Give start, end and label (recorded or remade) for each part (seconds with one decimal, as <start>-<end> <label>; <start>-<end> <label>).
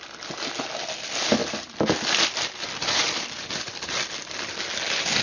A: 0.0-1.4 recorded; 1.4-4.5 remade; 4.5-5.2 recorded